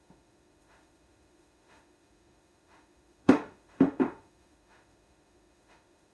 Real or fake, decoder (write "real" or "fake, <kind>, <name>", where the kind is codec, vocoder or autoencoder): fake, autoencoder, DAC-VAE